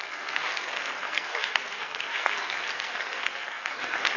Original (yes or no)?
no